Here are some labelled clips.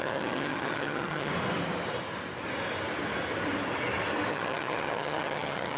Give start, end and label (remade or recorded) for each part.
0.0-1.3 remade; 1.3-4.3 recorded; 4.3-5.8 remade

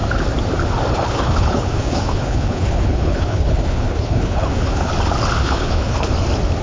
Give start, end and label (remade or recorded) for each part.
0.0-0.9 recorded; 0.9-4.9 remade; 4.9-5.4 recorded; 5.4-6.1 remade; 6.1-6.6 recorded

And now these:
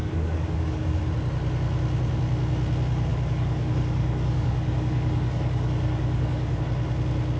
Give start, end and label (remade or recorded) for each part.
0.0-1.0 remade; 1.0-3.1 recorded; 3.1-6.6 remade; 6.6-7.4 recorded

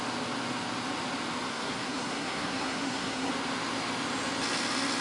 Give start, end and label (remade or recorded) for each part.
0.0-1.5 recorded; 1.5-3.3 remade; 3.3-5.0 recorded